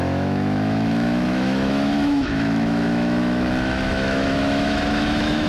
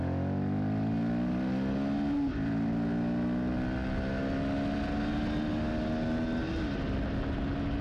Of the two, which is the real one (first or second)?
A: second